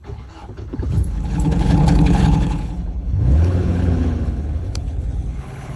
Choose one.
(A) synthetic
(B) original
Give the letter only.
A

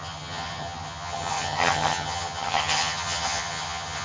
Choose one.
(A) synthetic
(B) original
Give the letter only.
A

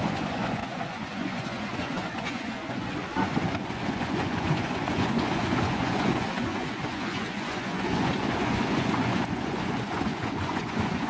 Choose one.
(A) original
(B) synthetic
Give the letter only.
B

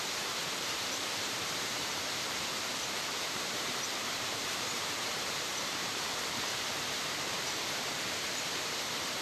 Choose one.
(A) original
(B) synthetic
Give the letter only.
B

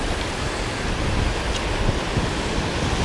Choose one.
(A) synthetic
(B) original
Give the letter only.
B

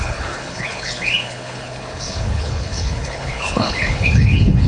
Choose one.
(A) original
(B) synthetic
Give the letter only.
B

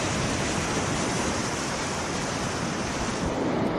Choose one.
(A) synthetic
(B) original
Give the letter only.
B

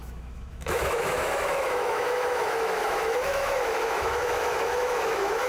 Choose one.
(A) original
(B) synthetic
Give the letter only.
B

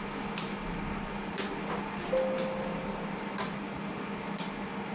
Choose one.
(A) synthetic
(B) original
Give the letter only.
B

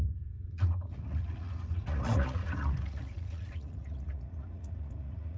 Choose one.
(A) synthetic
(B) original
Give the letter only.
A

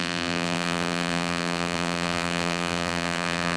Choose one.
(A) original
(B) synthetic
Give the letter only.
B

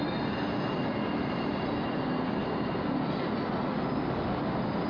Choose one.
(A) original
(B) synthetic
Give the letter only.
A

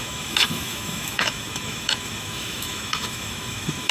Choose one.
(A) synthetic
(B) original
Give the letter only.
A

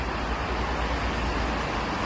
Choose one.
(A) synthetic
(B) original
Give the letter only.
B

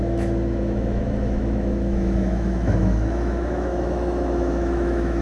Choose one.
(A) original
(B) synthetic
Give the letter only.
B